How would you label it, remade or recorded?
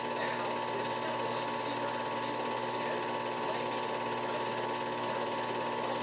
recorded